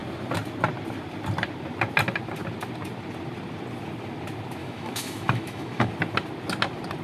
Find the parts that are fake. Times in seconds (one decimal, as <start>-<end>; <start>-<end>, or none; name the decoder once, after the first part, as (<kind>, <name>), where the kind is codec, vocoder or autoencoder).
4.6-5.9 (autoencoder, DAC-VAE)